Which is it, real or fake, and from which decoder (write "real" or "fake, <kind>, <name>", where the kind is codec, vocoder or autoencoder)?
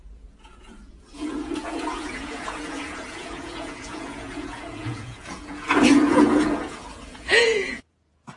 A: fake, vocoder, Vocos